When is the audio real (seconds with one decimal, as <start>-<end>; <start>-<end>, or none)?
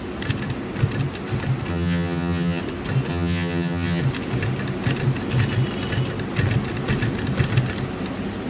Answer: 0.0-1.7; 2.6-3.1; 4.0-8.5